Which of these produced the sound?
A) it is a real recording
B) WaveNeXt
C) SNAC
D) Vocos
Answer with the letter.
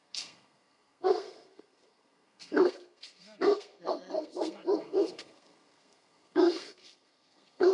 C